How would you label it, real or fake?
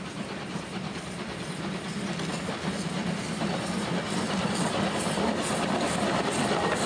real